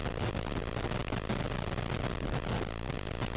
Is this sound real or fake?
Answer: real